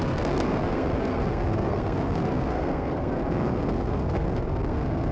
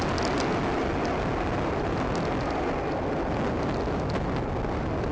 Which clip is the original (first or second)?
second